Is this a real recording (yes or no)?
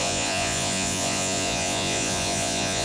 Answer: no